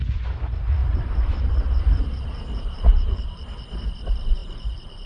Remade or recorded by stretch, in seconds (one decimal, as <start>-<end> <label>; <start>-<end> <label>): 0.0-0.8 recorded; 0.8-3.9 remade; 3.9-4.4 recorded; 4.4-5.1 remade